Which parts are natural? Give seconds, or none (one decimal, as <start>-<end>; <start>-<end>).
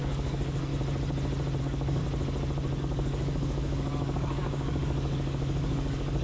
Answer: 0.7-1.6; 2.0-2.8